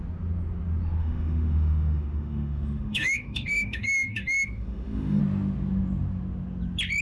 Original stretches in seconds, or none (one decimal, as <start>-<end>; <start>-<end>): 0.0-1.0; 5.2-7.0